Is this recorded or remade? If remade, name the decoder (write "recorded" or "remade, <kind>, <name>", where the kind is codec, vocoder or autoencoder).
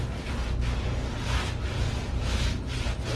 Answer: recorded